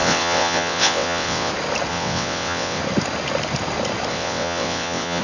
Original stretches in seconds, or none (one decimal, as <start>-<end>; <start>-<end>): 1.5-1.9; 2.8-4.1